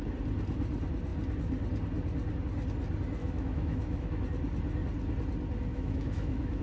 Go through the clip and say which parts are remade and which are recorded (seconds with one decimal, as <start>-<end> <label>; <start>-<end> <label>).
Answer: 0.0-3.2 recorded; 3.2-4.2 remade; 4.2-5.7 recorded; 5.7-6.6 remade